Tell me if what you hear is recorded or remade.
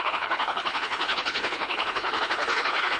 remade